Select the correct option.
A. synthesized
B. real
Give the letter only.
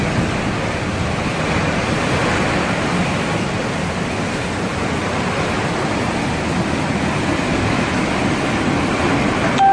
B